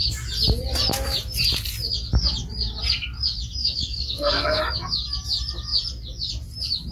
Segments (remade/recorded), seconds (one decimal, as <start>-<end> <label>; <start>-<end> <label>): 0.0-3.6 recorded; 3.6-4.6 remade; 4.6-6.9 recorded